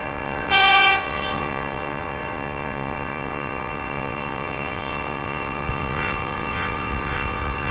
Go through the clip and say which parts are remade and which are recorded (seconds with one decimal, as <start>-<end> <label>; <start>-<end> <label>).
0.0-7.7 remade